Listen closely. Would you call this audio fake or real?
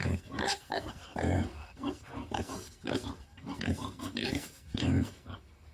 fake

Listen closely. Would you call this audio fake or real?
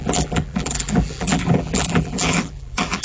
fake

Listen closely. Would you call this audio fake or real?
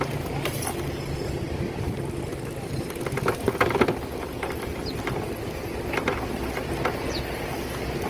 real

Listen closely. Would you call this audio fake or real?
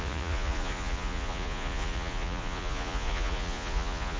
fake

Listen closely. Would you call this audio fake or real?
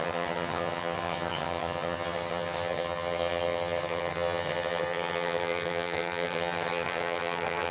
fake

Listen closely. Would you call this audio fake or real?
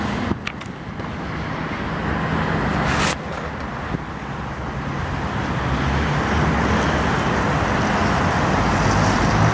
real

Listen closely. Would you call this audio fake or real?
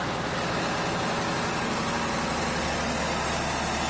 real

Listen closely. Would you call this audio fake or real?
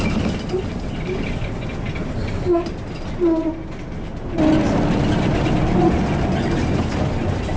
real